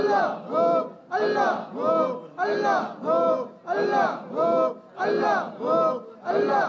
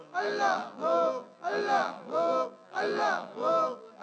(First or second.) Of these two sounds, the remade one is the second